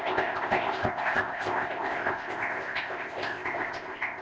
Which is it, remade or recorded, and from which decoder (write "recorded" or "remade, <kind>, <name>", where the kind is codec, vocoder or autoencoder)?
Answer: remade, codec, ZipCodec